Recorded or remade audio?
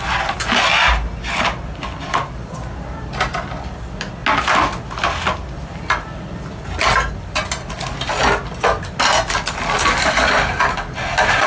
recorded